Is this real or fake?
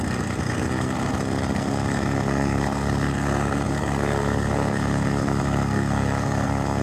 fake